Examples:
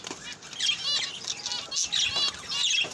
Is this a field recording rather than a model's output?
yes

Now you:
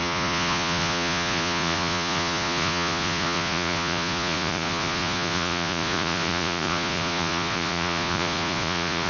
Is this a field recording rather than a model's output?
no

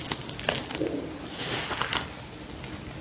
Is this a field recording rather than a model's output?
yes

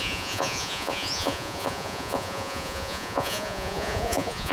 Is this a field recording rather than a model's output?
no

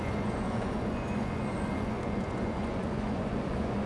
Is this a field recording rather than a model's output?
no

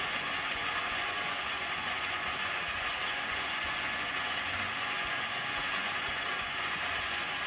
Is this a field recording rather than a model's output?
no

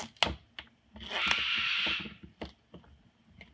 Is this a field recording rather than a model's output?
yes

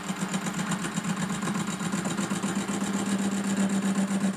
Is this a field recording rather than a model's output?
yes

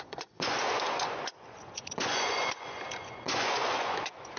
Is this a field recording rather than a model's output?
no